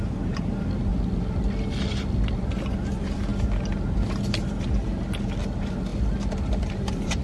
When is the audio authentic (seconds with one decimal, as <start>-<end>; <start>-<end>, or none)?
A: 0.9-2.3; 3.3-5.4